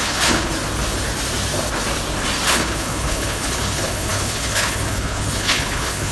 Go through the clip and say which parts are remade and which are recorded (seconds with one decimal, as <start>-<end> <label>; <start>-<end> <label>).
0.0-0.5 remade; 0.5-2.5 recorded; 2.5-6.1 remade